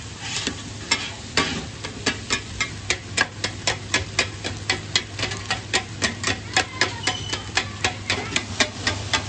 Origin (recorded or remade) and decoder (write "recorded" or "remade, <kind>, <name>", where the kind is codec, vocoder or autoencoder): recorded